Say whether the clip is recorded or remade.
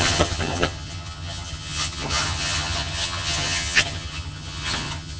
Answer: remade